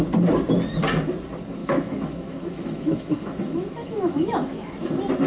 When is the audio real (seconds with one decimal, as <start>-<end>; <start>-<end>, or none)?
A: 0.0-1.6; 4.7-5.3